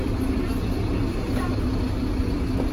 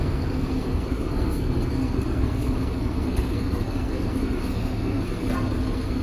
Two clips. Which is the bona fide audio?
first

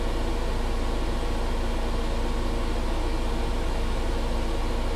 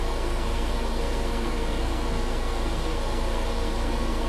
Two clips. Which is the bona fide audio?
first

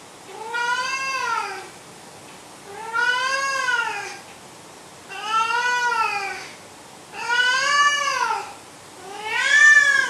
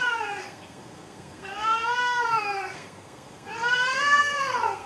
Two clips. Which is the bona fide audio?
first